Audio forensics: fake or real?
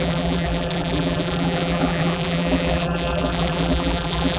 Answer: fake